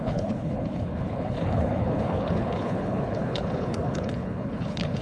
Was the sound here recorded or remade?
remade